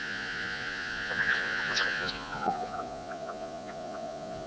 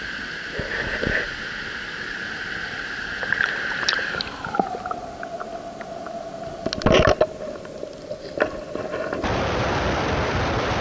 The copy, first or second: first